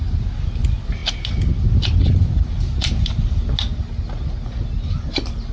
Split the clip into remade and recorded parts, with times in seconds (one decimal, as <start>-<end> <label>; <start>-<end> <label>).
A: 0.0-5.5 recorded